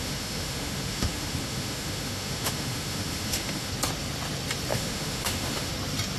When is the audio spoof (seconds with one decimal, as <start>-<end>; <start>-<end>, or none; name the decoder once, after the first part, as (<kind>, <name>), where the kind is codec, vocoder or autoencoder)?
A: 0.0-3.7 (autoencoder, DAC-VAE); 4.7-5.7